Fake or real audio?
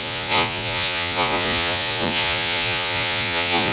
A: fake